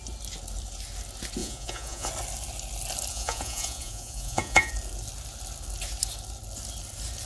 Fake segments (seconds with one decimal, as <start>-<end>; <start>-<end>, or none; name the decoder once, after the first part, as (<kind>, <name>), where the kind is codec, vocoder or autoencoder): 1.4-2.1 (vocoder, Vocos); 3.1-4.7